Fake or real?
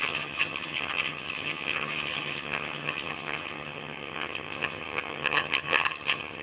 fake